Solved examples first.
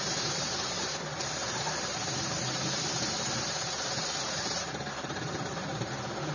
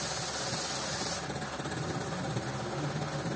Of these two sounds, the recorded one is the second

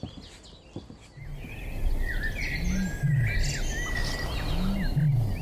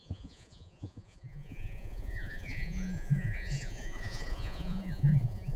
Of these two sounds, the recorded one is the first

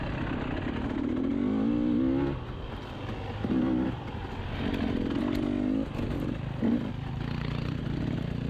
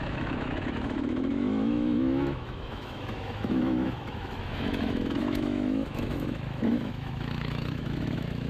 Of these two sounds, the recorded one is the first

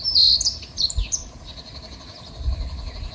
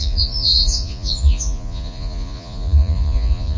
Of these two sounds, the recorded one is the first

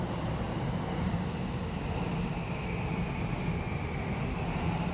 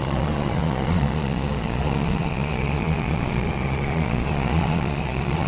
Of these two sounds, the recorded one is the first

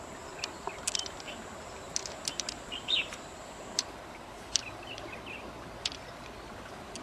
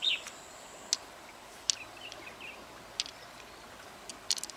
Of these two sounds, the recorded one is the second